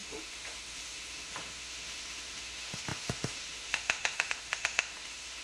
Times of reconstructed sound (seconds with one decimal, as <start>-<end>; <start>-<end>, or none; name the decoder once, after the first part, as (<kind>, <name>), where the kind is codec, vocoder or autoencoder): 0.0-5.4 (autoencoder, DAC-VAE)